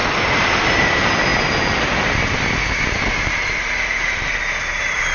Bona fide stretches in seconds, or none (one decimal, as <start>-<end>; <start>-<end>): 0.0-5.1